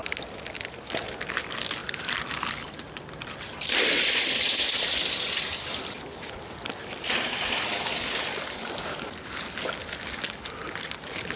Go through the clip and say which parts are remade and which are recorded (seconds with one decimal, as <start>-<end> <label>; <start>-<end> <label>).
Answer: 0.0-1.8 recorded; 1.8-3.1 remade; 3.1-3.5 recorded; 3.5-5.8 remade; 5.8-11.4 recorded